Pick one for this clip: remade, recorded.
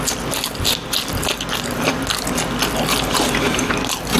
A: recorded